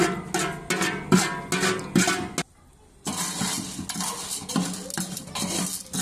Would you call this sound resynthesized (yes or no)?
no